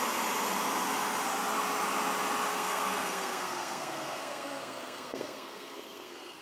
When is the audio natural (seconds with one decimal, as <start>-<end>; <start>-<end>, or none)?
0.0-2.5